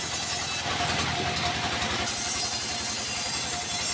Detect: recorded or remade recorded